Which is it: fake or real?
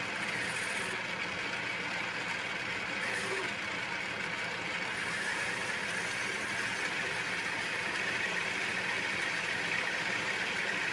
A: real